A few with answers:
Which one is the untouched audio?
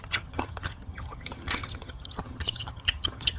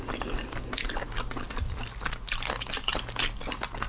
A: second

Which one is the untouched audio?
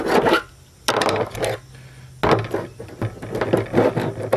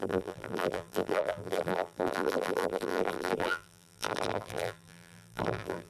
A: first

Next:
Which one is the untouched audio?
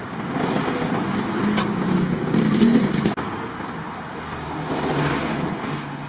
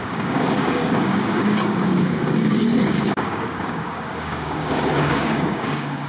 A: first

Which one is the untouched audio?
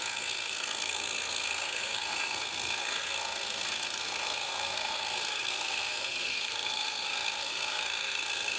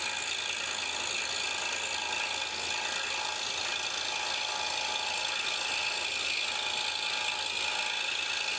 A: second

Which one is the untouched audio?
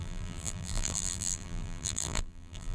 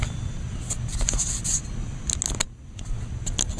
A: second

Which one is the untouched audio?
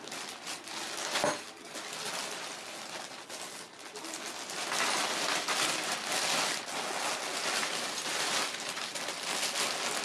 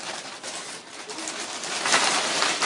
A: first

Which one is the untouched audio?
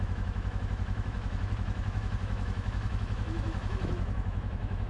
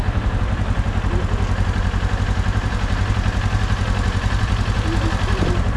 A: second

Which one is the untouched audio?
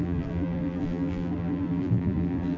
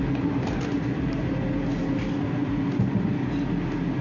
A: second